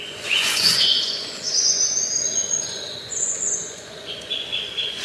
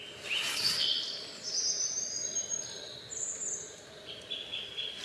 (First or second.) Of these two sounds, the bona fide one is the second